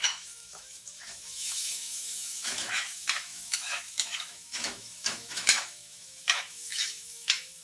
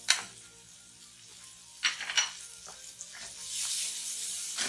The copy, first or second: first